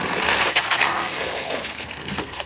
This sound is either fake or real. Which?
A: fake